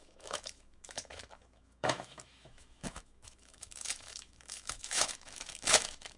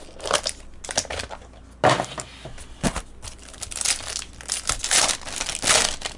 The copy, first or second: first